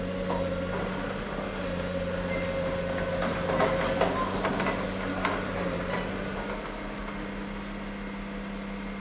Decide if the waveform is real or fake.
real